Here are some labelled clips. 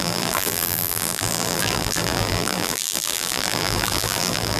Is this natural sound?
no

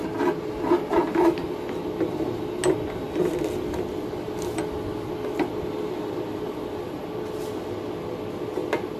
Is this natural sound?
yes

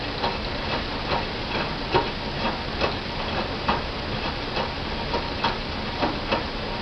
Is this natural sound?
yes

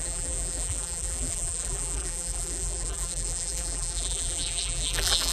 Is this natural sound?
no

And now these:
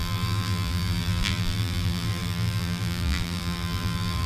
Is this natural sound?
no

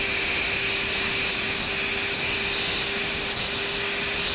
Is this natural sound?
yes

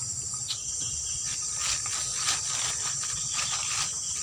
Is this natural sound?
yes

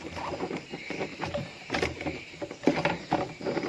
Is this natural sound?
no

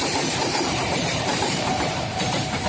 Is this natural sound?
no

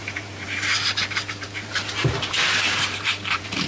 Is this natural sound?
no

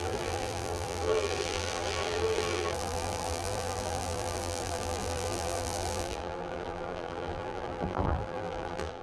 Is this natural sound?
no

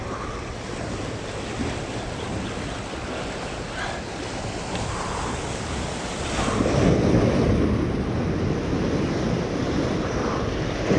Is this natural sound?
yes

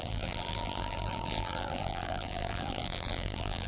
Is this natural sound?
no